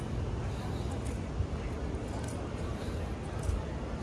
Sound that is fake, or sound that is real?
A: real